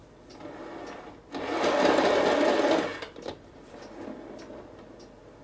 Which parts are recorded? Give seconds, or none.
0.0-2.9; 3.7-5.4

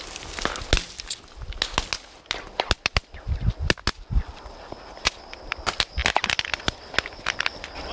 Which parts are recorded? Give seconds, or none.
0.0-7.9

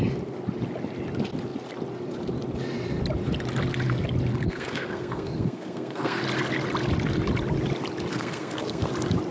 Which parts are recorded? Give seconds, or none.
0.0-4.3; 6.2-8.1; 8.9-9.3

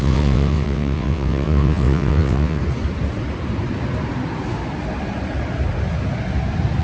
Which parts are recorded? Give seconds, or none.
2.6-6.8

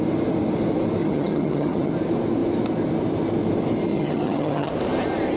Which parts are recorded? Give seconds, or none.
0.0-1.0; 1.9-3.9; 4.7-5.4

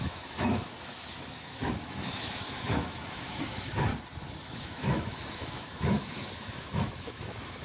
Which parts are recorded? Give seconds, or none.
3.9-4.5

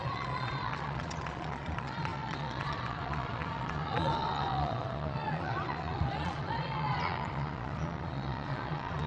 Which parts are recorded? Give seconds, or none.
none